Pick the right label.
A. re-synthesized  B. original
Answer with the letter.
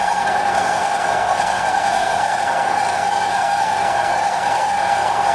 A